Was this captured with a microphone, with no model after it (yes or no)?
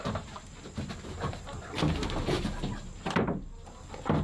yes